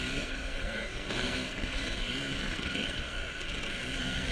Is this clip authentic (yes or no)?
no